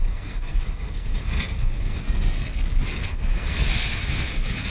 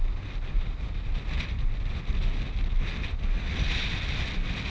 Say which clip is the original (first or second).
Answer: second